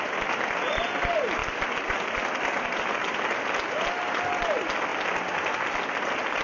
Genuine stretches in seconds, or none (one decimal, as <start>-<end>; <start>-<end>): 0.0-6.4